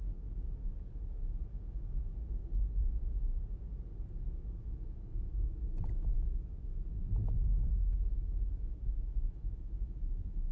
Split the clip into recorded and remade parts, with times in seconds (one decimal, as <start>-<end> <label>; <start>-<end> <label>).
0.0-2.4 remade; 2.4-4.2 recorded; 4.2-10.5 remade